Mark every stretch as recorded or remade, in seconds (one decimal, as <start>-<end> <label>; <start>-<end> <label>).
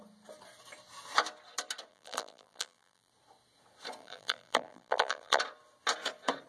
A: 0.0-1.9 recorded; 1.9-3.1 remade; 3.1-4.0 recorded; 4.0-5.4 remade; 5.4-6.5 recorded